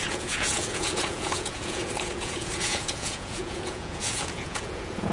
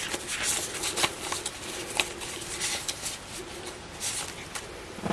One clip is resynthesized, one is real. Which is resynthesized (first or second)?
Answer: first